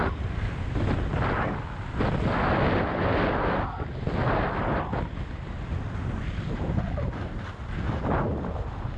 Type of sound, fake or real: real